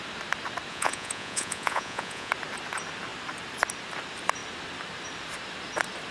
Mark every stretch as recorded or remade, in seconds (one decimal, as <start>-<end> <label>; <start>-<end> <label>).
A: 0.0-0.7 recorded; 0.7-2.3 remade; 2.3-6.1 recorded